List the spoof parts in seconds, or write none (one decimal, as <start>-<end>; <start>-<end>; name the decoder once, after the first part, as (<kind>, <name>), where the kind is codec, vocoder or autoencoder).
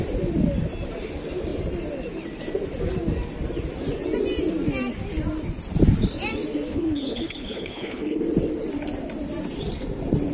6.7-8.2 (codec, HILCodec)